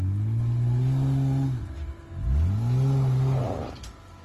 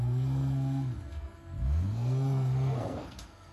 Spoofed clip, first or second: second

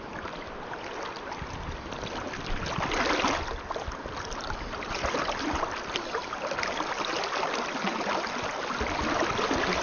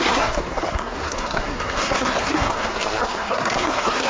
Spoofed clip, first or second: second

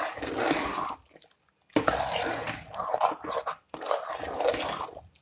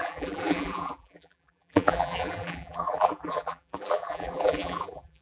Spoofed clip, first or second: second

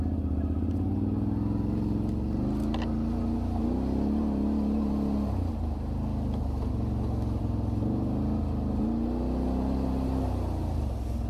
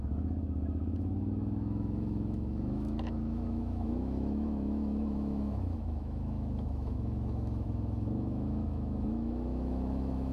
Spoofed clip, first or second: second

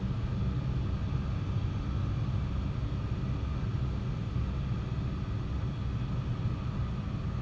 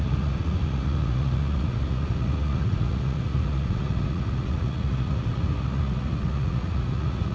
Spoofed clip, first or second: second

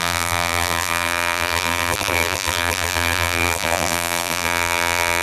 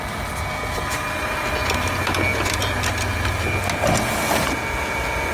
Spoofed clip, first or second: first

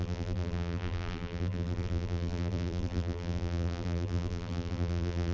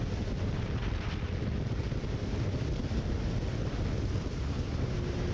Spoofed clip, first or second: first